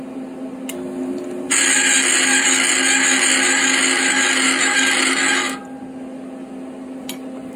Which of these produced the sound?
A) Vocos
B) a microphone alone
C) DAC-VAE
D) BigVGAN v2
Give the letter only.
B